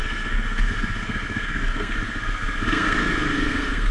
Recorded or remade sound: remade